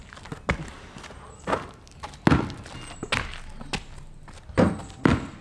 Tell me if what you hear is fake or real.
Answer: real